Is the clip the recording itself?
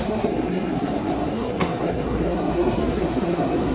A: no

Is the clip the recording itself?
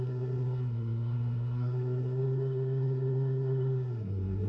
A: no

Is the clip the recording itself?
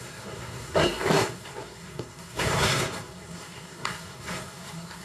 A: no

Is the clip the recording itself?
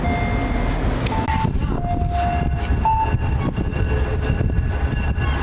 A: yes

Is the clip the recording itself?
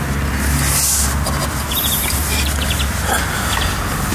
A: yes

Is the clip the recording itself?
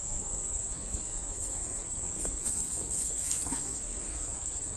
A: no